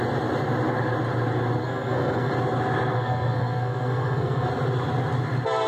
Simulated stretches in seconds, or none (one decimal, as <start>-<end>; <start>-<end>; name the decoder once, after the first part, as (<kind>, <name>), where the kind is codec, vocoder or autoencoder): 1.6-2.3 (codec, SNAC); 2.9-4.5